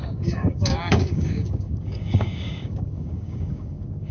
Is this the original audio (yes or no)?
no